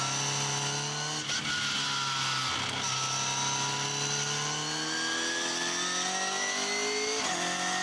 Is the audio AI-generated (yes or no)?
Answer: no